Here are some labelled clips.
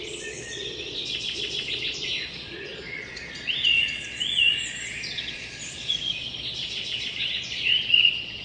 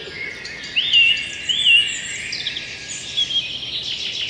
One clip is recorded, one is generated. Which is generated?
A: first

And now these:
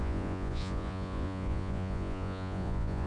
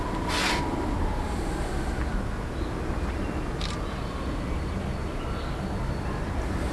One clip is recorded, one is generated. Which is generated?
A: first